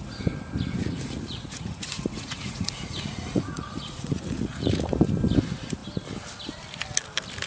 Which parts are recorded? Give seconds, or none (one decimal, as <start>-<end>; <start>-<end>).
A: 0.0-0.8; 4.9-7.5